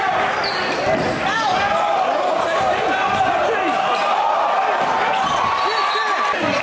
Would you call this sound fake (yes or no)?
no